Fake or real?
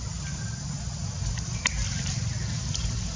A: real